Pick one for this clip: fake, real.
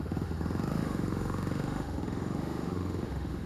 fake